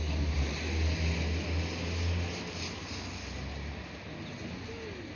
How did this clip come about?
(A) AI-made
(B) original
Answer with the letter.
B